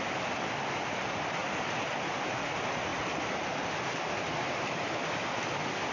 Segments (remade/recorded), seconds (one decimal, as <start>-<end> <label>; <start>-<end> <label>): 0.0-1.4 remade; 1.4-2.4 recorded; 2.4-5.9 remade